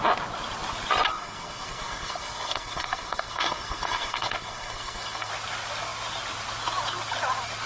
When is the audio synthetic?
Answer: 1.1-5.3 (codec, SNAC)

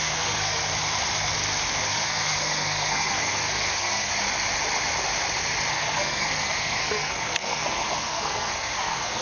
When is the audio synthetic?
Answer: 0.0-0.7 (codec, SNAC); 1.7-4.1; 5.7-9.2

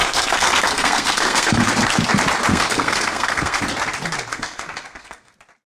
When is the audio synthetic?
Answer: 0.0-1.7 (codec, SNAC); 2.5-3.6; 4.3-5.3